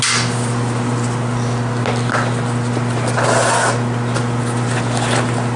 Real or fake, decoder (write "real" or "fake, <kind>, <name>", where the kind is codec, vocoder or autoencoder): real